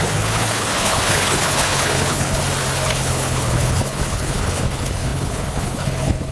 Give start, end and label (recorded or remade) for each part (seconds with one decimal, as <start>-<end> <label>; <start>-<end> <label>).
0.0-2.4 remade; 2.4-2.9 recorded; 2.9-6.3 remade